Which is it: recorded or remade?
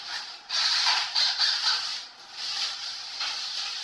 recorded